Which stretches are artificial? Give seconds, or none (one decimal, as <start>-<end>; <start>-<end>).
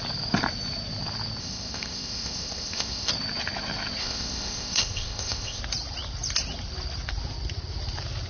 1.4-3.1; 4.0-5.6